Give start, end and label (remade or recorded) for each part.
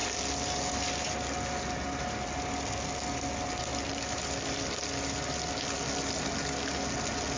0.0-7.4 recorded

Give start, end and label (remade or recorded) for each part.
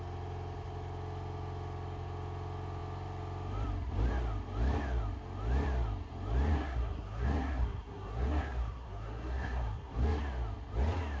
0.0-6.5 recorded; 6.5-10.2 remade; 10.2-11.2 recorded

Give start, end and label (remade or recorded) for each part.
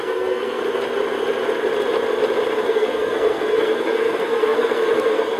0.0-0.6 remade; 0.6-2.7 recorded; 2.7-5.4 remade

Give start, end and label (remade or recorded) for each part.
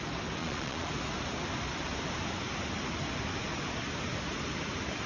0.0-0.4 recorded; 0.4-0.9 remade; 0.9-5.1 recorded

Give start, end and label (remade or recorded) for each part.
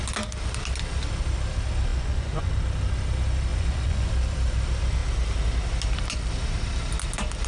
0.0-1.9 recorded; 1.9-2.5 remade; 2.5-3.5 recorded; 3.5-4.1 remade; 4.1-7.5 recorded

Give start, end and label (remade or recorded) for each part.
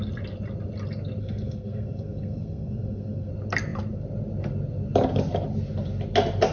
0.0-1.2 recorded; 1.2-3.3 remade; 3.3-6.5 recorded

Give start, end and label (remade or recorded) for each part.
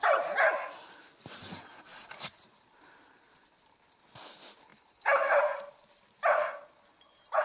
0.0-1.9 recorded; 1.9-3.5 remade; 3.5-4.7 recorded; 4.7-6.1 remade; 6.1-7.4 recorded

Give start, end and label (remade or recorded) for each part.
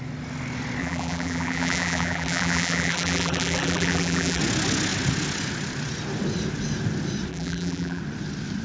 0.0-0.8 recorded; 0.8-4.4 remade; 4.4-7.3 recorded; 7.3-8.0 remade; 8.0-8.6 recorded